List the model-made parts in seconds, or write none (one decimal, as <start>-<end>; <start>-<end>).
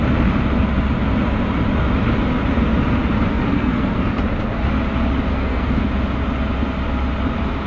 3.5-4.1; 5.3-5.8